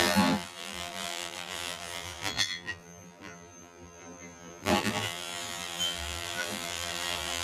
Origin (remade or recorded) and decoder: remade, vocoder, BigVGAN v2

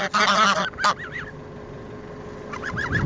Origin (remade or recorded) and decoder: recorded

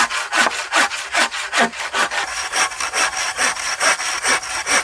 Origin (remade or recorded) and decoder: recorded